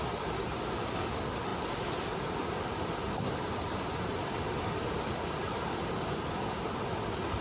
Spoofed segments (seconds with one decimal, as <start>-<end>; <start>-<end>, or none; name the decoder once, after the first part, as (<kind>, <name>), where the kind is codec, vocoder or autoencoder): none